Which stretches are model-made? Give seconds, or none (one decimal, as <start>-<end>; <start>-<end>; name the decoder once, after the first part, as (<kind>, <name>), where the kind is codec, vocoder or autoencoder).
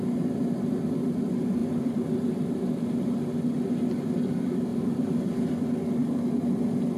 4.7-5.5 (vocoder, BigVGAN v2)